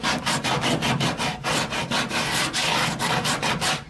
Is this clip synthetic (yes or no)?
no